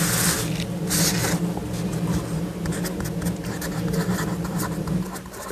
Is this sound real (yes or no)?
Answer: yes